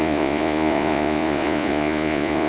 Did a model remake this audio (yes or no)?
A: yes